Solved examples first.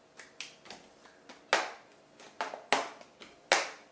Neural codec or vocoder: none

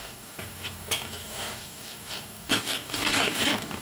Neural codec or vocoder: codec, DAC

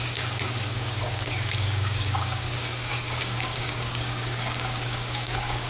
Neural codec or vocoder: codec, DAC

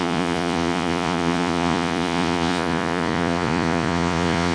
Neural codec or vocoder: vocoder, Vocos